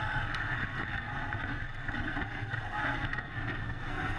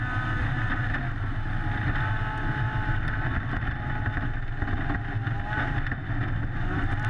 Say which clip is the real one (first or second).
second